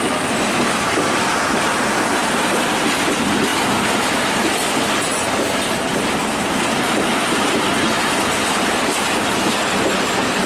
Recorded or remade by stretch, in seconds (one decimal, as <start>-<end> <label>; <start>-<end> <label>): 0.0-10.5 recorded

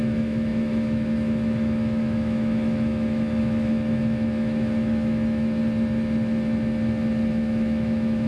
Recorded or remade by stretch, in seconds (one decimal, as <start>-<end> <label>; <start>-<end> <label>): 0.0-5.6 remade; 5.6-7.3 recorded; 7.3-8.3 remade

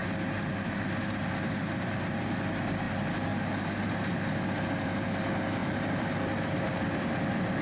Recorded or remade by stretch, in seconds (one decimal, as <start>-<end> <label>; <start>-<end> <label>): 0.0-5.6 recorded; 5.6-7.1 remade; 7.1-7.6 recorded

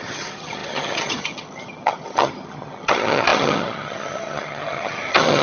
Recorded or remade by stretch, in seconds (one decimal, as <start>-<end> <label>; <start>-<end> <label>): 0.0-5.4 remade

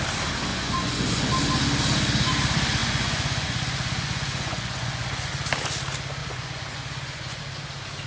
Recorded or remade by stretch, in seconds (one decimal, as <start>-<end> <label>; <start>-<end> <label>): 0.0-0.5 recorded; 0.5-1.3 remade; 1.3-2.8 recorded; 2.8-5.3 remade; 5.3-6.2 recorded; 6.2-7.4 remade; 7.4-8.1 recorded

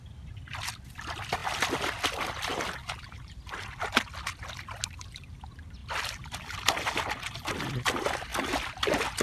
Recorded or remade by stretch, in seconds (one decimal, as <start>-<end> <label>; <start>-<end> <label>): 0.0-9.2 recorded

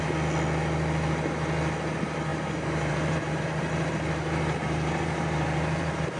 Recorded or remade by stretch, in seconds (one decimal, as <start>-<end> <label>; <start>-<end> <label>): 0.0-2.3 recorded; 2.3-6.2 remade

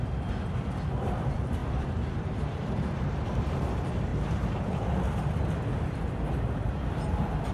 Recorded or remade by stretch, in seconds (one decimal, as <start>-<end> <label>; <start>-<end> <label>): 0.0-4.1 remade; 4.1-6.5 recorded; 6.5-7.5 remade